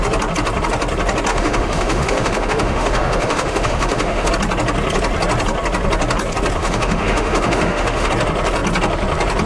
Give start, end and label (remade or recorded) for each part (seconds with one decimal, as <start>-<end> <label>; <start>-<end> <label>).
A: 0.0-1.3 recorded; 1.3-4.3 remade; 4.3-6.6 recorded; 6.6-8.1 remade; 8.1-9.5 recorded